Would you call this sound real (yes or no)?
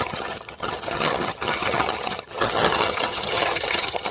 no